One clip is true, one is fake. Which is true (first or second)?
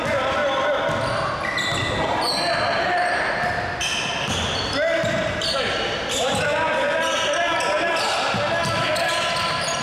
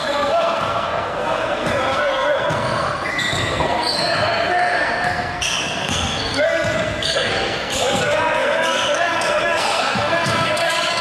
first